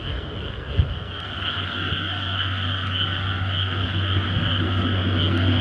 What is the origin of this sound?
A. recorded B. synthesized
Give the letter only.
B